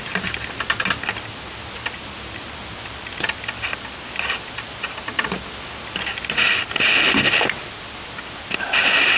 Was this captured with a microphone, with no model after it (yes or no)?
yes